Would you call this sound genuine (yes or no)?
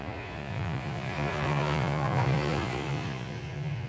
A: no